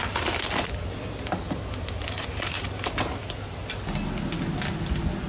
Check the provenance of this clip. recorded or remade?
recorded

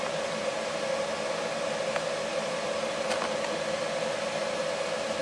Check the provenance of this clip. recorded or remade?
recorded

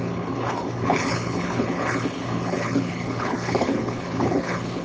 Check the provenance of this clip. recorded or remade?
remade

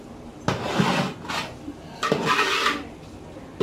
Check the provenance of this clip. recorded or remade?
recorded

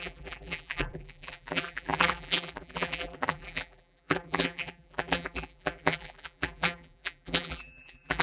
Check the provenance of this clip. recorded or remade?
remade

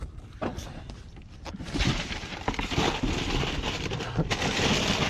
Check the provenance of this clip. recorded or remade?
remade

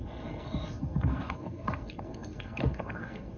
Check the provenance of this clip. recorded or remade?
remade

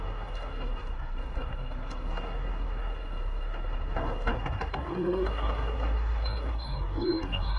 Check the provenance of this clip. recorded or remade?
remade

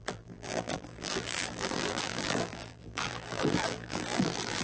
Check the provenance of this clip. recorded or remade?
remade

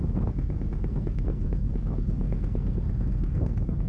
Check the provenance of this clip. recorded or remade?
remade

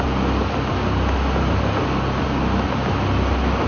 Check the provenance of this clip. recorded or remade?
recorded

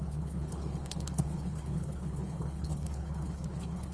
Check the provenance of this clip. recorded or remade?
remade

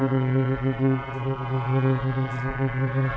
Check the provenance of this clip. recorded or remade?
remade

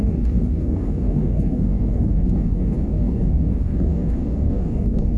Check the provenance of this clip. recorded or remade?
remade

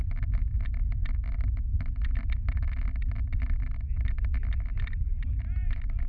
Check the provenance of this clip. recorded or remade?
recorded